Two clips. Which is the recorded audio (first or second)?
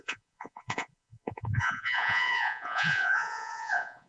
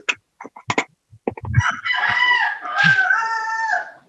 second